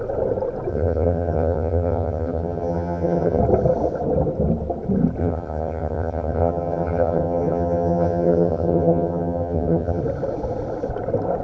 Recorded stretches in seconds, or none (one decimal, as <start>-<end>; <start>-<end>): 0.0-0.7; 3.4-5.2; 10.0-11.4